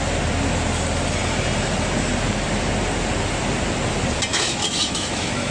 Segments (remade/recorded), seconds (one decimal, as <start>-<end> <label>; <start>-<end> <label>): 0.0-4.3 recorded; 4.3-5.5 remade